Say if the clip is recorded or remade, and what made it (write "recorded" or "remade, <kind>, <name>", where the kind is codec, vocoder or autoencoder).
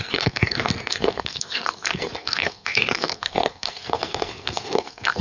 remade, codec, SNAC